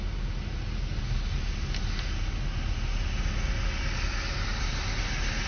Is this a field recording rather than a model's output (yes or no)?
yes